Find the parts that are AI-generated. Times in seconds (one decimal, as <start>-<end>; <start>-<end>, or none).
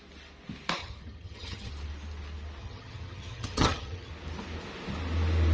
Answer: 0.8-1.7; 2.6-4.1